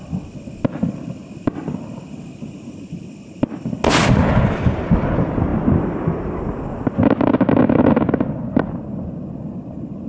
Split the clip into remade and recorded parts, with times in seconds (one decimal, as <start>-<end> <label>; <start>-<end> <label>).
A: 0.0-10.1 recorded